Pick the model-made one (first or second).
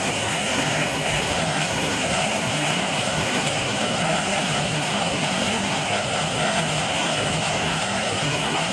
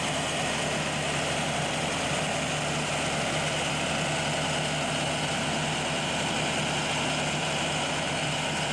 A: first